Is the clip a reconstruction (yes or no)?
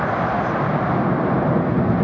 no